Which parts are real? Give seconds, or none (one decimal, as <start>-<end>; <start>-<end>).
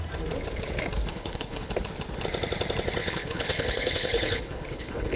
0.0-1.1; 1.7-3.0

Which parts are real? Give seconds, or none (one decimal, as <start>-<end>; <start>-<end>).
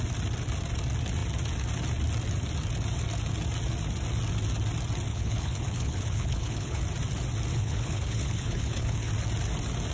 0.0-5.1; 6.8-7.5; 9.1-9.9